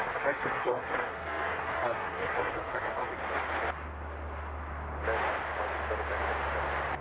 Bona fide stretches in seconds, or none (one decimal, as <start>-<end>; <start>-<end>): 3.1-7.0